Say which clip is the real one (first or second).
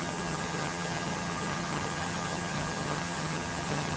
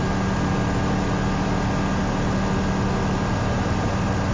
second